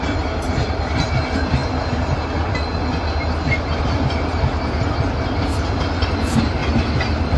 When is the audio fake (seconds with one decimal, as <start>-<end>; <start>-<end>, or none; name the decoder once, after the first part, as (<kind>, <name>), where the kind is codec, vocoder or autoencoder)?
none